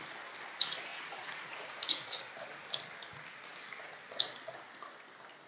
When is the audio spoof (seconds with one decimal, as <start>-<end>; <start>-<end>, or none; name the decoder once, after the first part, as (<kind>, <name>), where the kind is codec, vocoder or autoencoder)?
0.9-2.2 (vocoder, Vocos)